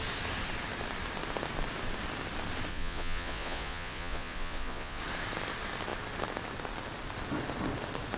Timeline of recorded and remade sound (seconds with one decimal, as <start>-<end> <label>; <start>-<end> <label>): 0.0-2.7 recorded; 2.7-5.0 remade; 5.0-8.2 recorded

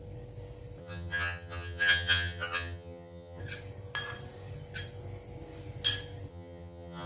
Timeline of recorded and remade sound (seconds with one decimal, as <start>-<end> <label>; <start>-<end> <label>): 0.0-0.8 recorded; 0.8-3.4 remade; 3.4-6.3 recorded; 6.3-7.1 remade

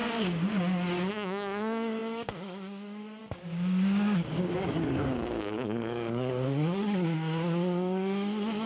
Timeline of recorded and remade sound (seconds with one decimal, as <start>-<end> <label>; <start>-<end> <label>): 0.0-1.1 recorded; 1.1-8.7 remade

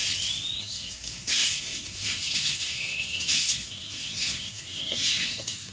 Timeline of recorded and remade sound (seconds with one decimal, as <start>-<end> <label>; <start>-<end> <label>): 0.0-0.6 recorded; 0.6-5.7 remade

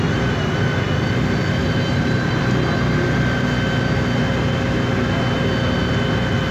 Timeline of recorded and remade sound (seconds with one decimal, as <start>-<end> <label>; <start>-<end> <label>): 0.0-1.6 recorded; 1.6-2.3 remade; 2.3-6.5 recorded

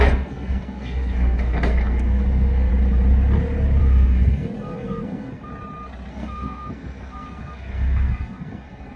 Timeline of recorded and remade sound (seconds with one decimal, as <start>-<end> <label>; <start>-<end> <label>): 0.0-2.7 remade; 2.7-3.8 recorded; 3.8-5.5 remade; 5.5-6.1 recorded; 6.1-9.0 remade